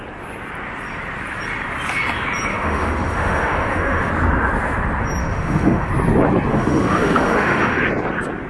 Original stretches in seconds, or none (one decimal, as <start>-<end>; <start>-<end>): 0.0-2.5; 4.1-5.2; 5.9-6.5; 7.8-8.5